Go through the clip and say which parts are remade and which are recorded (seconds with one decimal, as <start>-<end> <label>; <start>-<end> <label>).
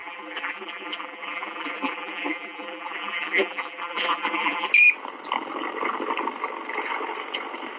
0.0-4.7 remade; 4.7-7.8 recorded